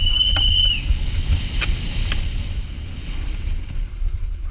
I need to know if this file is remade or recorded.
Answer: recorded